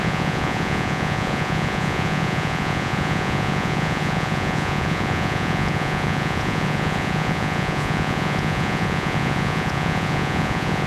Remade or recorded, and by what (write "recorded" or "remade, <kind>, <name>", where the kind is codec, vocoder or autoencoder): remade, vocoder, Vocos